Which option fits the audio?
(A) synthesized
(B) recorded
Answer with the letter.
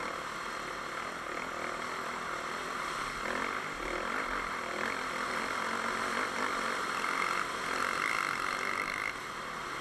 B